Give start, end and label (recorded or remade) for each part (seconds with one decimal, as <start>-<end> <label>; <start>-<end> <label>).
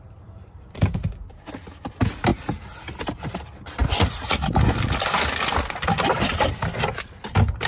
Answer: 0.0-7.7 recorded